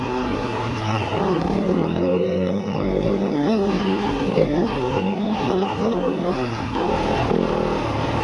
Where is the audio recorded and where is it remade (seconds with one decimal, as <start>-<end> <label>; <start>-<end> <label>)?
0.0-6.9 remade; 6.9-8.2 recorded